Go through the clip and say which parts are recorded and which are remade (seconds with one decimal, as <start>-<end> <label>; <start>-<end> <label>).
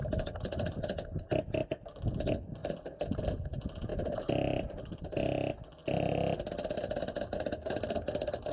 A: 0.0-0.8 remade; 0.8-2.6 recorded; 2.6-3.2 remade; 3.2-3.9 recorded; 3.9-5.0 remade; 5.0-8.5 recorded